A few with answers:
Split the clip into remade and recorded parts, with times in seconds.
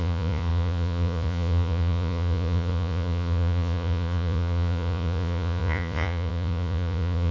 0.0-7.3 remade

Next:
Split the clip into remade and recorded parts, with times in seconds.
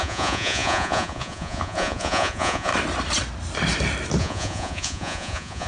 0.0-2.7 remade; 2.7-4.2 recorded; 4.2-5.7 remade